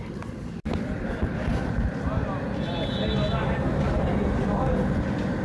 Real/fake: real